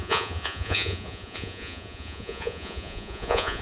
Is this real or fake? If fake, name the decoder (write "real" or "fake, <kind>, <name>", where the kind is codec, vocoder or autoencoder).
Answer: fake, vocoder, Vocos